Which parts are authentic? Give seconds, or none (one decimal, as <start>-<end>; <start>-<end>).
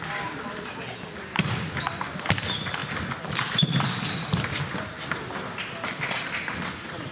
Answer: 2.8-6.0